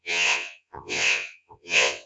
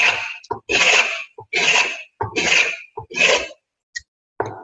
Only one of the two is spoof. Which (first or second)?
first